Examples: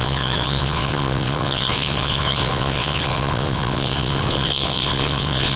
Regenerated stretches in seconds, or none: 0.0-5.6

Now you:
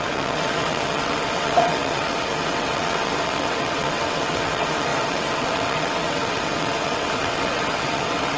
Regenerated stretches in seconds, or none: 0.0-8.4

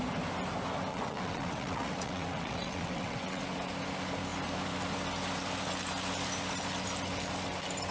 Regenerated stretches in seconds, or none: 0.9-3.4

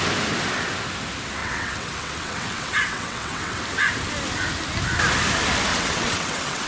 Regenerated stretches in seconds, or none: 1.4-3.6; 5.7-6.7

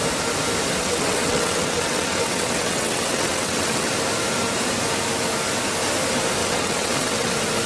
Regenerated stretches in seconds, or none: 0.8-3.9; 6.4-7.3

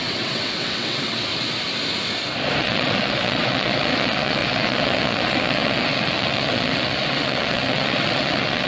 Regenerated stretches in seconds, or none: 0.0-1.3; 2.6-8.7

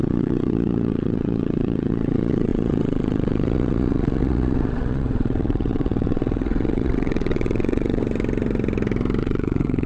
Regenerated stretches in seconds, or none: 0.0-8.0; 9.2-9.9